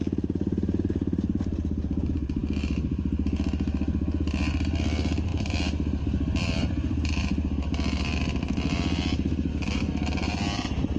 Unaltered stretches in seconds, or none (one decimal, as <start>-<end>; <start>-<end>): 0.0-11.0